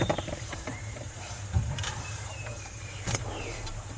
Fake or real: fake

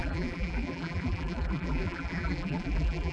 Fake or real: fake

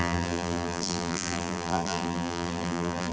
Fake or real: fake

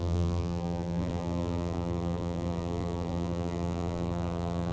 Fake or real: fake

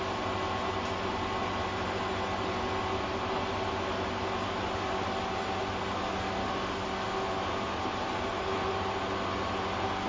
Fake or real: real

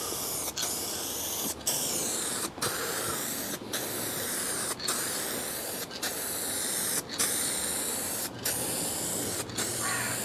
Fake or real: real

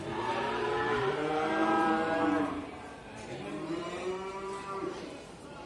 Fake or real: fake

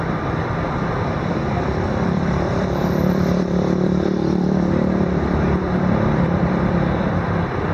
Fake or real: fake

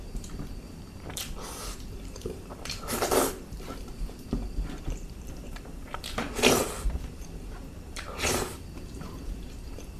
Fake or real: fake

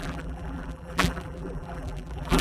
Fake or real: fake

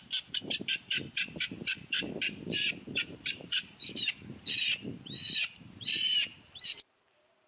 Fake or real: fake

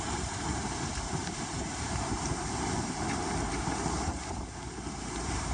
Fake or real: fake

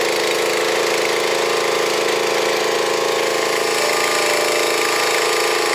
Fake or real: real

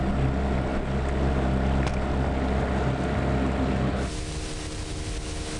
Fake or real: real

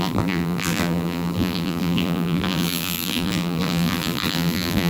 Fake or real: fake